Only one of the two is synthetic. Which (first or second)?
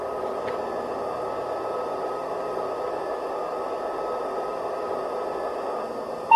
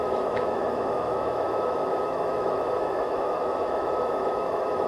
second